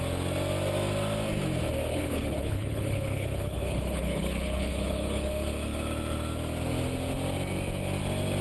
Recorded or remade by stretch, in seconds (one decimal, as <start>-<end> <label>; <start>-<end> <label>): 0.0-1.9 recorded; 1.9-5.3 remade; 5.3-8.4 recorded